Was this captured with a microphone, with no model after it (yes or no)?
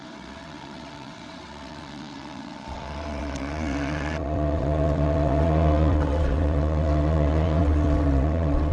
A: no